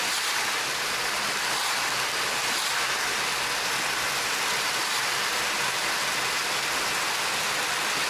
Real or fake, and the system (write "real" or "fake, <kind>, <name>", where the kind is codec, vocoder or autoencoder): real